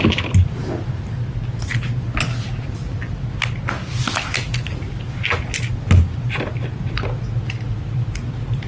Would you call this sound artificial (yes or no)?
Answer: no